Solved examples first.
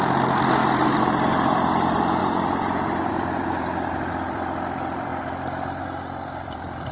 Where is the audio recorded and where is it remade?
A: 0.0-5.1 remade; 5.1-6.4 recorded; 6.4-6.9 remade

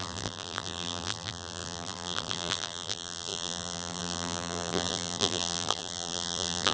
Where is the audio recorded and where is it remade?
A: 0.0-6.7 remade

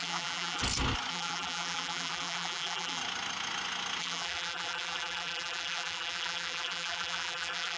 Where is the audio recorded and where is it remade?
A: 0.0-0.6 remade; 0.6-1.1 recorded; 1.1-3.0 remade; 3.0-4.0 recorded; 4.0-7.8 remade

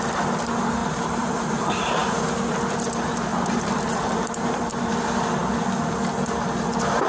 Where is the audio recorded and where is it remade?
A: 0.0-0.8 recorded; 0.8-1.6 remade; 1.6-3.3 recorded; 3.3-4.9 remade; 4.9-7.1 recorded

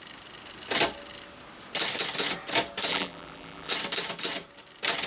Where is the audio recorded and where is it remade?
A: 0.0-2.9 recorded; 2.9-3.7 remade; 3.7-5.1 recorded